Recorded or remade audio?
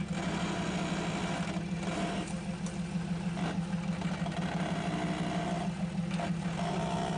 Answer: recorded